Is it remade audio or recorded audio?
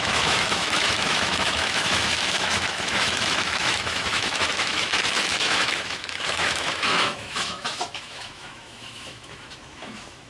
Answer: remade